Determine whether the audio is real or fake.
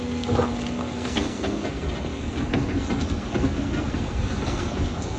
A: fake